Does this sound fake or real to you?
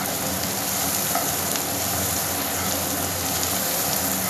fake